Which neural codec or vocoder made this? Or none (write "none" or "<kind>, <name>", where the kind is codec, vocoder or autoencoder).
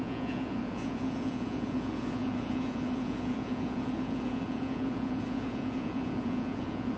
vocoder, Vocos